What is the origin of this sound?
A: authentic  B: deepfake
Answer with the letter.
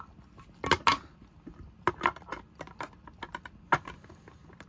A